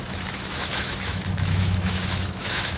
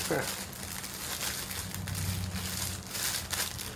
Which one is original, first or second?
second